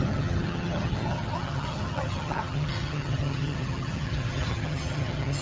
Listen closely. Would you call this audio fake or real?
fake